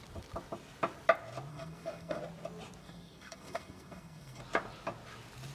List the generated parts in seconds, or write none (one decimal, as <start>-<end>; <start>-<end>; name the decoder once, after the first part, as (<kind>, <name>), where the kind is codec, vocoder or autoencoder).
1.5-2.2 (codec, SNAC); 2.8-4.4